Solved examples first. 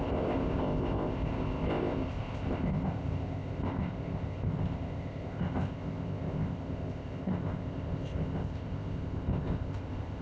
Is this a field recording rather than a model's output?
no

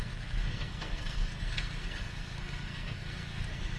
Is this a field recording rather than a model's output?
no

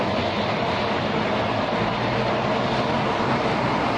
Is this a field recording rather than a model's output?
yes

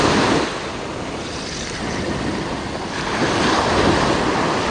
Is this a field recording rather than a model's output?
yes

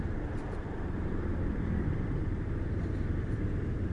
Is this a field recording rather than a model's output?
no